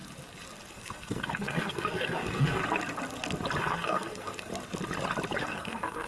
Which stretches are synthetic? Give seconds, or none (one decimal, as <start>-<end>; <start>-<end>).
0.7-2.6; 3.6-4.5; 5.4-6.1